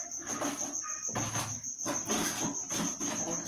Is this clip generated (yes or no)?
no